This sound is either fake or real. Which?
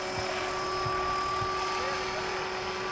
real